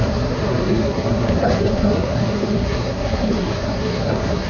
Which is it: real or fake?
fake